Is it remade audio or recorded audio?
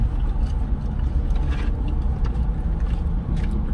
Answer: recorded